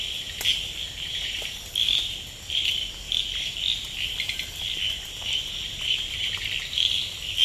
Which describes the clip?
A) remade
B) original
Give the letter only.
B